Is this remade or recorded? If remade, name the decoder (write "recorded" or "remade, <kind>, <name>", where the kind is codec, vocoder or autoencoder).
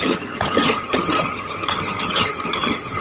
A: remade, vocoder, HiFi-GAN